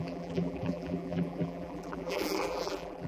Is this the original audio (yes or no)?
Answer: no